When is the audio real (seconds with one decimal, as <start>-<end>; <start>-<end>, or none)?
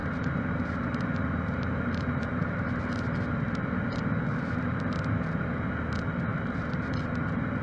2.8-4.3; 4.8-6.3; 7.0-7.6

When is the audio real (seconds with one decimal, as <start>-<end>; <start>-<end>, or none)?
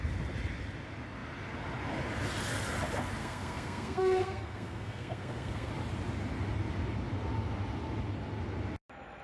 0.0-3.2; 5.7-9.2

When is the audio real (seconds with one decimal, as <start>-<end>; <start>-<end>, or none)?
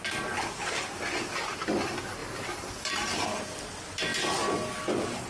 0.0-2.2; 2.9-5.3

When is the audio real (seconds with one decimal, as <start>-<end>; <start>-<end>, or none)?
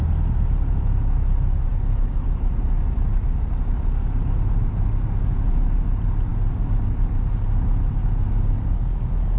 0.0-9.4